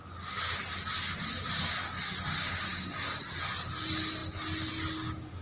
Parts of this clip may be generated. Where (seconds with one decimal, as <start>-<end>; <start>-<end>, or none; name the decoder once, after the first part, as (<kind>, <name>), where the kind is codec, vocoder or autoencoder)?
none